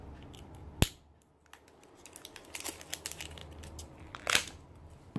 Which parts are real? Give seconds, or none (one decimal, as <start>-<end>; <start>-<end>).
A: 0.0-5.2